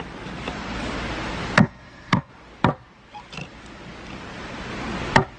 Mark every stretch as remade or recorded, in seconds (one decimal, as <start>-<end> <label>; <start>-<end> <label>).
0.0-1.6 recorded; 1.6-2.3 remade; 2.3-5.4 recorded